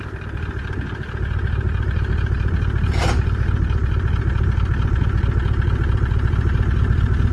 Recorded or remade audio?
recorded